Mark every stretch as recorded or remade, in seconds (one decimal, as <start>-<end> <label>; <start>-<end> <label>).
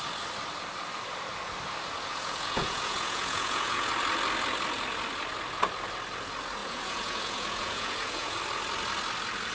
0.0-2.1 recorded; 2.1-3.9 remade; 3.9-6.6 recorded; 6.6-8.4 remade; 8.4-9.5 recorded